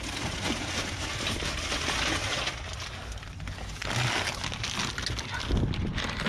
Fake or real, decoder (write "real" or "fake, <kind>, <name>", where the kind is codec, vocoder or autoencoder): real